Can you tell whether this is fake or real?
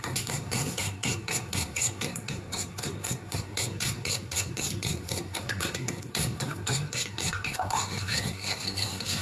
fake